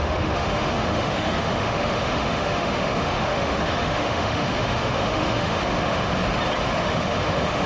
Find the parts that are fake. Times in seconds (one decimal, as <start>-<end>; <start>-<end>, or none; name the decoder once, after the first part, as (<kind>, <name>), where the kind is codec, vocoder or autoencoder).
0.0-6.1 (autoencoder, DAC-VAE); 6.8-7.7